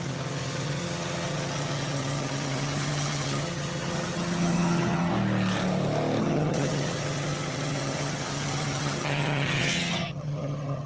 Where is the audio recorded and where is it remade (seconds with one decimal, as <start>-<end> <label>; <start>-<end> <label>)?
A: 0.0-5.1 remade; 5.1-6.2 recorded; 6.2-10.9 remade